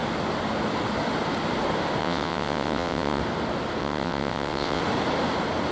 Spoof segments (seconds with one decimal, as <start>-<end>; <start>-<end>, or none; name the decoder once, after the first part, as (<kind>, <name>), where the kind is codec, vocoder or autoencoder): 2.0-3.2 (vocoder, WaveNeXt); 3.8-4.8